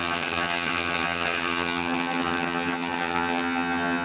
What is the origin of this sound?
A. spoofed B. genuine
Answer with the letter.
A